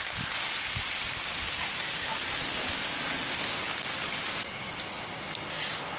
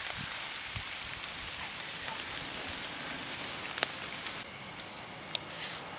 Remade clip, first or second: second